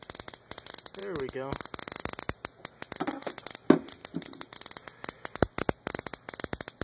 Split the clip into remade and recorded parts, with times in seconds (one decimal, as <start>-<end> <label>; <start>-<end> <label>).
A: 0.0-6.8 recorded